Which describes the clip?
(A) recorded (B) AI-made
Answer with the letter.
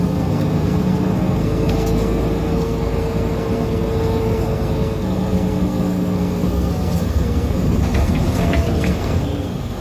B